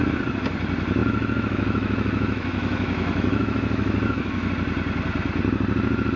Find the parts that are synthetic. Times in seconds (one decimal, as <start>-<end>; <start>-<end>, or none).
1.0-4.5